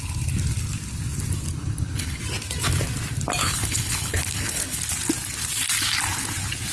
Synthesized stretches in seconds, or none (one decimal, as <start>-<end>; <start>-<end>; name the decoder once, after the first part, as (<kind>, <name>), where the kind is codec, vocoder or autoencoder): 1.5-2.2 (codec, HILCodec); 3.4-4.8